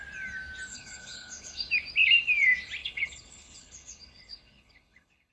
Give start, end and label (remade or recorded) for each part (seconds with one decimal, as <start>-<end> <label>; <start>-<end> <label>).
0.0-0.7 recorded; 0.7-1.7 remade; 1.7-2.8 recorded; 2.8-5.3 remade